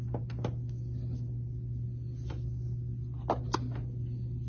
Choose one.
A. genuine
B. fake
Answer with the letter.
A